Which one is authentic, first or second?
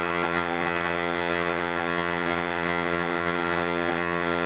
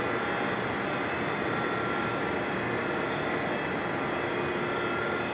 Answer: second